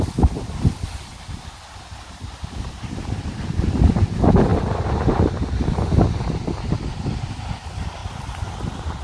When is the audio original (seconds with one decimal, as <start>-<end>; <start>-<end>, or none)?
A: 0.0-4.5; 5.3-8.0